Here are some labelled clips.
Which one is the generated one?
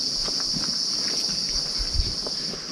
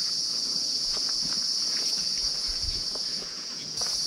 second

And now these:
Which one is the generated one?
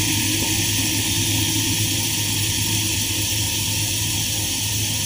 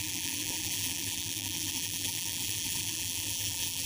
second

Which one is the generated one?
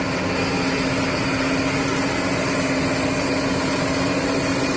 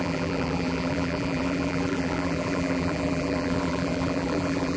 second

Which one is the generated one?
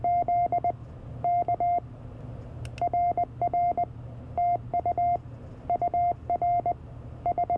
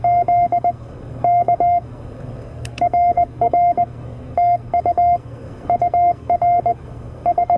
second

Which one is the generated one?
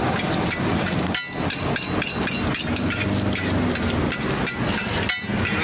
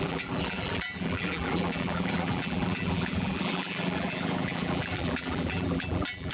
second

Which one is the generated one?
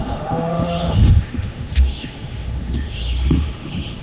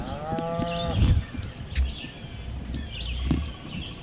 first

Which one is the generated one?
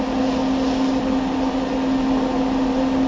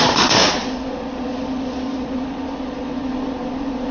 second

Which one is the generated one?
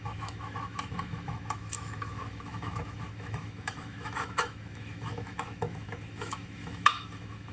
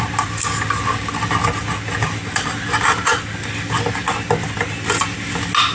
first